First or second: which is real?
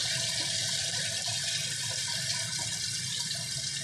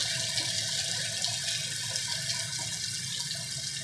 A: second